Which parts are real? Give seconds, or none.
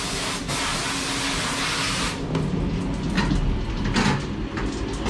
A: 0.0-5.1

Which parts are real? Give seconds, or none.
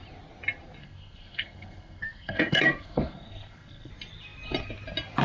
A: 0.0-0.8; 3.9-5.2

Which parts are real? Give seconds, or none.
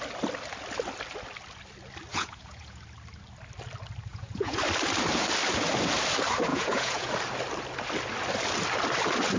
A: 0.0-2.1; 2.8-4.1; 4.6-6.5; 7.1-9.4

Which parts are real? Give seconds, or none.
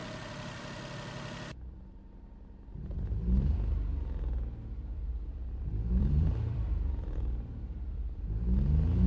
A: 0.0-2.9; 3.7-4.9; 8.2-9.1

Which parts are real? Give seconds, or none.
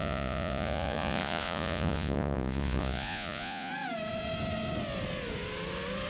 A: 3.7-6.1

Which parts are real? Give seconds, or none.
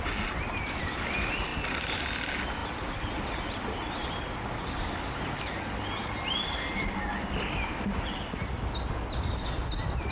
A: 0.0-10.1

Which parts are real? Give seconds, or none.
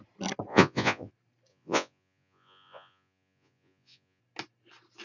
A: 0.0-0.5; 1.1-1.5; 4.2-5.0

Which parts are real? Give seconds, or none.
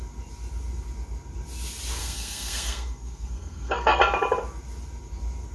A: 0.0-2.0; 4.0-5.5